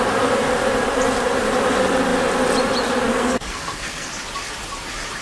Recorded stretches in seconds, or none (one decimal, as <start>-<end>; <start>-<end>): 0.0-3.1; 4.1-5.2